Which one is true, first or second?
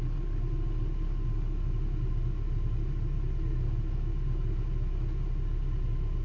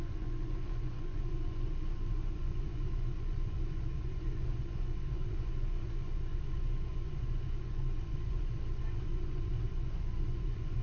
first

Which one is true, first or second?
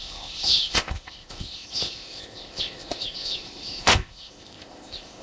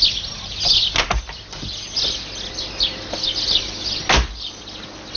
second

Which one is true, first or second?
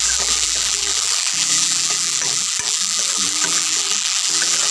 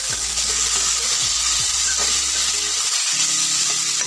second